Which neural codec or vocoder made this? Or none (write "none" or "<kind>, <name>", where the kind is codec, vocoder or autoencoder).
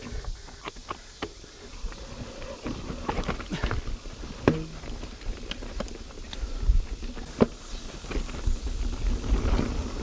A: none